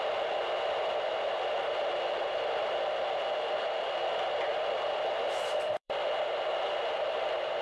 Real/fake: fake